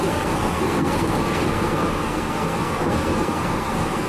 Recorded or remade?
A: remade